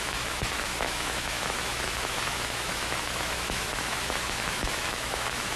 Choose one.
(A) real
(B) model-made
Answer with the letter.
B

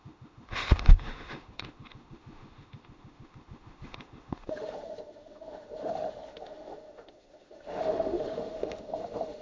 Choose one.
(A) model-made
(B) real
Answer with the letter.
A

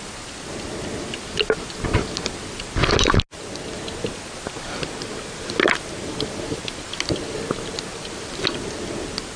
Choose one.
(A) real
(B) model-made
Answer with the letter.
A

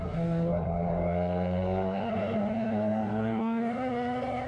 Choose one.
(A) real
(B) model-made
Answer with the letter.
B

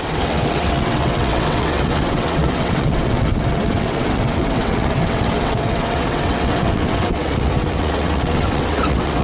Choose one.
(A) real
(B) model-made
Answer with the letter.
B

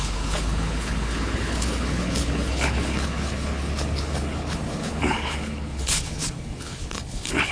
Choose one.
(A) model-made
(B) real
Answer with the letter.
A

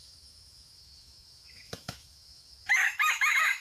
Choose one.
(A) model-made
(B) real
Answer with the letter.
A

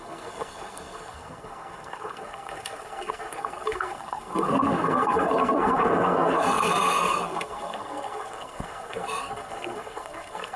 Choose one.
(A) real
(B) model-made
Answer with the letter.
B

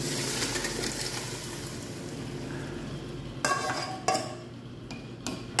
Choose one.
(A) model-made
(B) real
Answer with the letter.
B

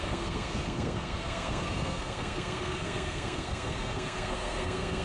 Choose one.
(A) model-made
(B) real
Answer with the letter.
A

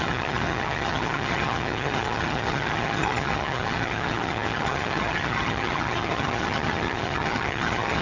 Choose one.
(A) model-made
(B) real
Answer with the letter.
A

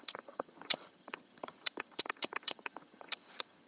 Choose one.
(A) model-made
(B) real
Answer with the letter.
A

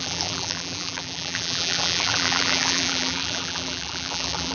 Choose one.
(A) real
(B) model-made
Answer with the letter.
B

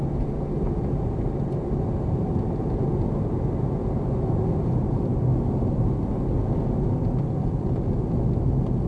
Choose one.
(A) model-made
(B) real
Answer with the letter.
B